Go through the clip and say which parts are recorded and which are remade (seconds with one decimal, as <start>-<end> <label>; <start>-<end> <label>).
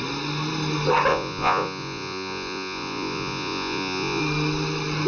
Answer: 0.0-1.1 recorded; 1.1-4.2 remade; 4.2-5.1 recorded